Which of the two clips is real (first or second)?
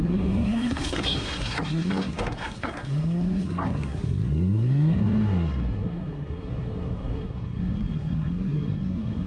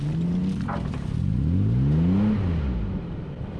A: second